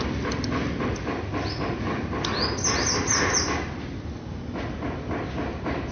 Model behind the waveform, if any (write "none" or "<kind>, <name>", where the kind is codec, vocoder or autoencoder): none